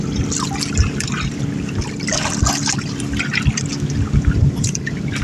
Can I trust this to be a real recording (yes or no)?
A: yes